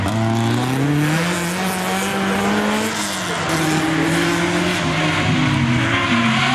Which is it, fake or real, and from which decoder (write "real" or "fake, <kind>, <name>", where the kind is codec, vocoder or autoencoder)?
real